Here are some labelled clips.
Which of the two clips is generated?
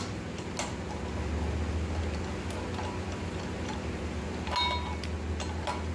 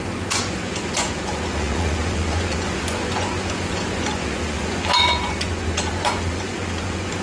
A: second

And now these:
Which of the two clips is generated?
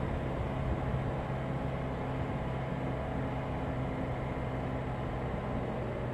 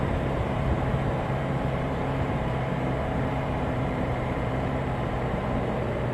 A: second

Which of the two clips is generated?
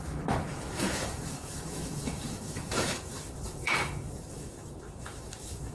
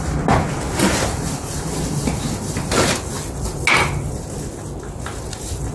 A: first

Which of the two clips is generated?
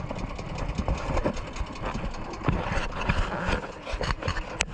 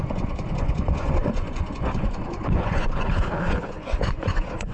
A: second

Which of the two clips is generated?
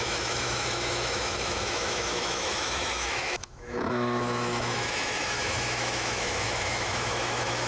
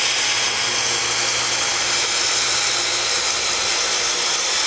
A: first